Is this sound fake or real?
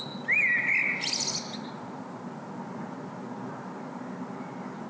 real